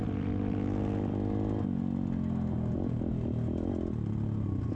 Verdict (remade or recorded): recorded